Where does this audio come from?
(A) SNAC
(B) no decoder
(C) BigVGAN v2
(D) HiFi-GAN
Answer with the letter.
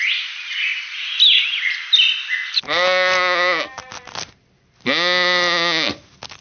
B